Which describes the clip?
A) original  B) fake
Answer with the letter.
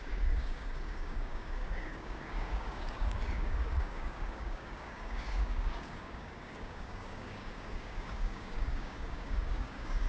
B